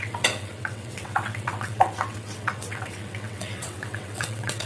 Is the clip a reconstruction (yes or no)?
yes